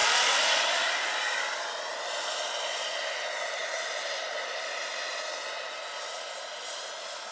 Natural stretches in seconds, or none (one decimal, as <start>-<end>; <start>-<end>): 0.0-7.3